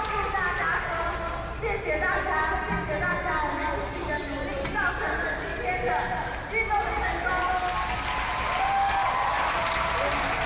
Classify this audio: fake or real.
real